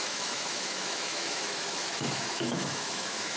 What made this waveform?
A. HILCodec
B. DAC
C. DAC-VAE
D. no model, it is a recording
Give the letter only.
C